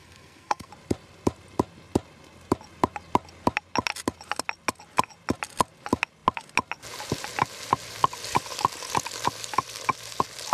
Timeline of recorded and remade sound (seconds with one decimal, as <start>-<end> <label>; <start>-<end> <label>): 0.0-0.7 remade; 0.7-10.5 recorded

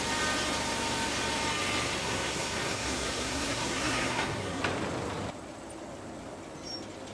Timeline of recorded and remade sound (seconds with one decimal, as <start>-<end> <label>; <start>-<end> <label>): 0.0-2.0 recorded; 2.0-4.6 remade; 4.6-7.1 recorded

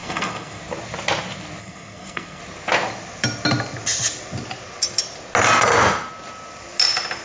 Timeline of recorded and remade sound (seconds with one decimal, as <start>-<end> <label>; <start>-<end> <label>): 0.0-0.6 remade; 0.6-1.6 recorded; 1.6-2.4 remade; 2.4-7.2 recorded

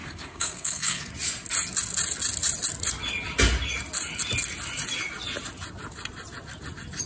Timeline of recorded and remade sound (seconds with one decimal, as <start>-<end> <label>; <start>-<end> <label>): 0.0-1.1 remade; 1.1-7.1 recorded